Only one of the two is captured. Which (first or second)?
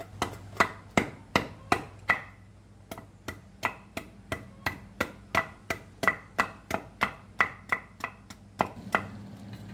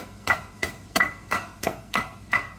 first